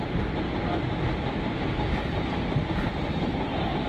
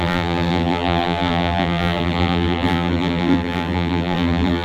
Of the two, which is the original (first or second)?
first